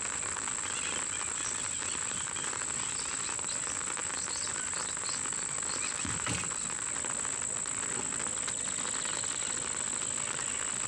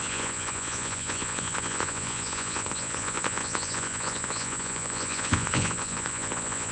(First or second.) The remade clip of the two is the second